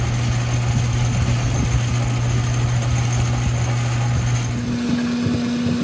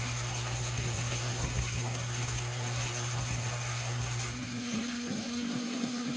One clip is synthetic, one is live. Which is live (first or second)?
first